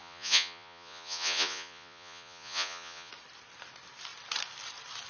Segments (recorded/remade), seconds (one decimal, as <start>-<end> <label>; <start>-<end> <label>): 0.0-3.1 remade; 3.1-5.1 recorded